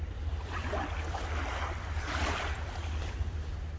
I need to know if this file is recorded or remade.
remade